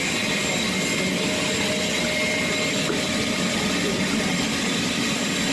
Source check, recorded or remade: recorded